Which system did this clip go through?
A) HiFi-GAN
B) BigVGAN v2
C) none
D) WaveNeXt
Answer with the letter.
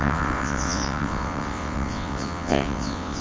D